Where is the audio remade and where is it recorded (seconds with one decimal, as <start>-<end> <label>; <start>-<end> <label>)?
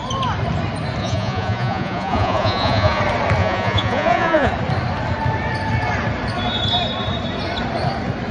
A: 0.0-1.0 recorded; 1.0-3.0 remade; 3.0-3.4 recorded; 3.4-4.5 remade; 4.5-8.3 recorded